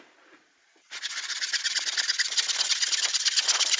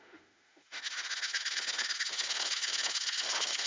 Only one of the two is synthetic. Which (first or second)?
second